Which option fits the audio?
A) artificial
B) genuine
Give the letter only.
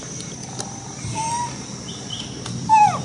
B